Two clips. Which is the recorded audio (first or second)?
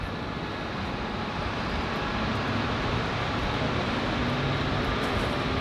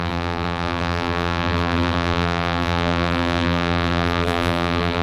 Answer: first